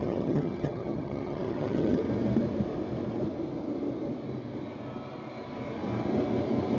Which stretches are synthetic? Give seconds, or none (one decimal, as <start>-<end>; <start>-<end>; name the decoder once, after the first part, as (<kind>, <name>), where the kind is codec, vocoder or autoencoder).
0.0-2.0 (vocoder, HiFi-GAN)